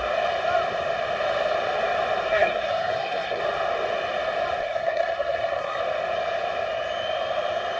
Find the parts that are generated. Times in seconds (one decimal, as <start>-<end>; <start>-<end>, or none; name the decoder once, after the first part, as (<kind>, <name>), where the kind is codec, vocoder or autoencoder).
2.3-3.4 (codec, SNAC); 4.6-5.8